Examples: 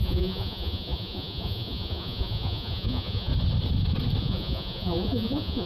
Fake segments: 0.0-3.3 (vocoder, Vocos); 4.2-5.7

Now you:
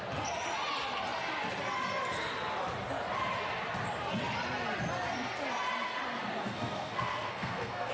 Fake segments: 6.4-7.9 (codec, SNAC)

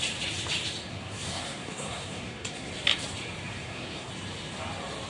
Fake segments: 0.9-2.7 (codec, SNAC); 3.5-4.1

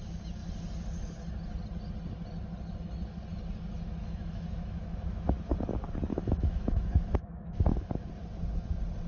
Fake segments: 3.7-5.5 (autoencoder, DAC-VAE); 6.1-7.9

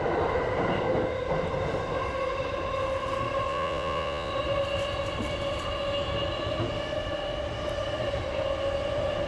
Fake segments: 3.5-4.3 (vocoder, Vocos)

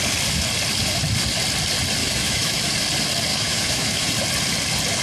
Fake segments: 2.0-2.7 (autoencoder, DAC-VAE); 3.3-4.1